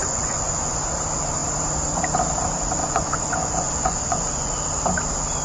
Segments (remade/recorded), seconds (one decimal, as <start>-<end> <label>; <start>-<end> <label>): 0.0-0.8 remade; 0.8-2.8 recorded; 2.8-4.6 remade; 4.6-5.4 recorded